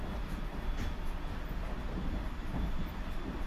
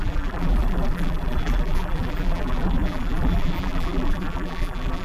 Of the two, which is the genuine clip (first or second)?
first